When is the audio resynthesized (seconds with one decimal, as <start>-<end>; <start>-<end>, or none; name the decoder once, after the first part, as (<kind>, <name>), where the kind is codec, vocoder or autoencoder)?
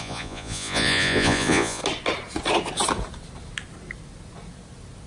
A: 0.0-1.8 (vocoder, Vocos)